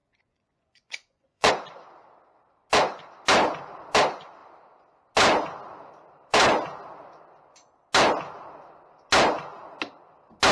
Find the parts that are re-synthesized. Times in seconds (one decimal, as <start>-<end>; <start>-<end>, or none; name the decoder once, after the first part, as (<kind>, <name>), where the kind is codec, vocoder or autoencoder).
0.0-1.5 (vocoder, Vocos)